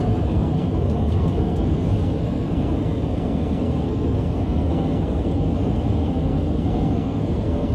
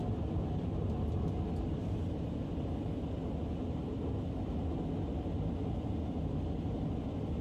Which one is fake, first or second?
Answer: first